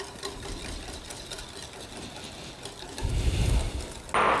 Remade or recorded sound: recorded